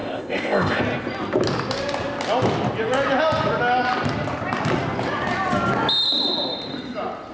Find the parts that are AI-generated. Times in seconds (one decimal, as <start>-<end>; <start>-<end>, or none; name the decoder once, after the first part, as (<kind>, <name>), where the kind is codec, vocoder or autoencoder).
0.0-0.8 (codec, ZipCodec)